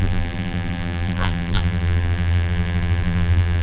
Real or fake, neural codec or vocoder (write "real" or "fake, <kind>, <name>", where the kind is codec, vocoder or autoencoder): fake, vocoder, BigVGAN v2